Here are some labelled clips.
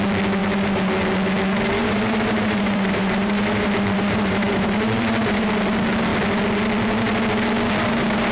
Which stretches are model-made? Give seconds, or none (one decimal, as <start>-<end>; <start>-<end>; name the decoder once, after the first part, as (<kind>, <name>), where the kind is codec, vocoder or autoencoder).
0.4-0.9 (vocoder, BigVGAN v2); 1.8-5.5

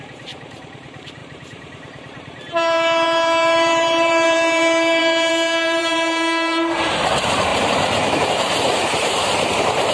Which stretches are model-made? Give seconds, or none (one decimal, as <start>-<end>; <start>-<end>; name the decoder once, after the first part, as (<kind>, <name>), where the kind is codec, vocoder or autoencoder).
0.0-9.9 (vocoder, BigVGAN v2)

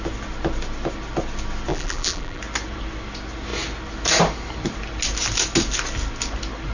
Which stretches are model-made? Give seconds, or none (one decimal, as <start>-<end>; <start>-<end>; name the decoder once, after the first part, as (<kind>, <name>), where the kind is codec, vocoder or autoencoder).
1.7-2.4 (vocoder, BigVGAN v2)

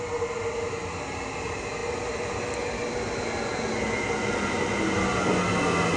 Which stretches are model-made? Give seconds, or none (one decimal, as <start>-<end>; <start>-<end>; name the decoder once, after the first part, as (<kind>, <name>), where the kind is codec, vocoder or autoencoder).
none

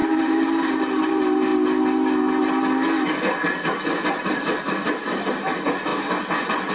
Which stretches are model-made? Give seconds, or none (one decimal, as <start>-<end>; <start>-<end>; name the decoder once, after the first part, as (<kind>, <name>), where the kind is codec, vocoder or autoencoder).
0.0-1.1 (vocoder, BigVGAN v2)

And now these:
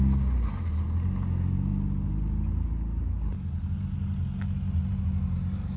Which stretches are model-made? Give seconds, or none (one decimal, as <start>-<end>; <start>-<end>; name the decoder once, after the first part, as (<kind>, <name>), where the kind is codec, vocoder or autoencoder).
none

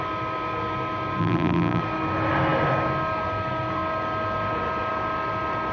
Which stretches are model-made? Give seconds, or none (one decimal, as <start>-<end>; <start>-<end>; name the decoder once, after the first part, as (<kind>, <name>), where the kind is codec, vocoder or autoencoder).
1.2-1.8 (vocoder, BigVGAN v2)

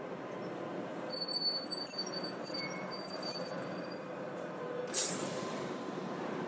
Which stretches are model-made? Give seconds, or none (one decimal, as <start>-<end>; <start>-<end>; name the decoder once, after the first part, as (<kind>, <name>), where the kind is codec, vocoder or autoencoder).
0.9-4.8 (vocoder, BigVGAN v2); 5.2-6.0